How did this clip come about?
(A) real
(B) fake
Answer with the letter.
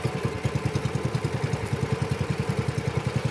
A